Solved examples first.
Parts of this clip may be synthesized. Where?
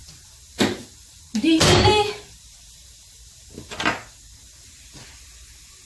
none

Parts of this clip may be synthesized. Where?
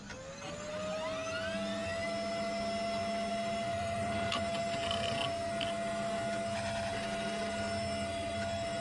3.7-4.6 (vocoder, BigVGAN v2)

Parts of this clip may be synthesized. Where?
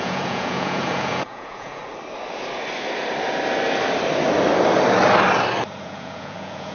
0.0-1.8 (vocoder, Vocos); 5.8-6.7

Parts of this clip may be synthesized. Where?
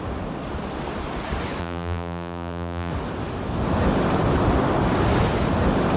1.6-2.9 (vocoder, BigVGAN v2)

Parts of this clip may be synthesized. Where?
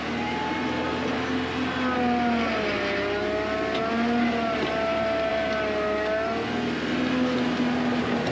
none